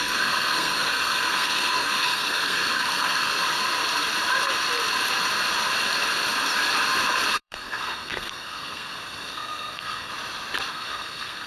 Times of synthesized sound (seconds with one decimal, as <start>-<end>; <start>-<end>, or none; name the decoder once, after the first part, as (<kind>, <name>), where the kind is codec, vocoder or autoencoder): 0.0-3.4 (codec, SNAC); 7.3-10.1; 10.7-11.5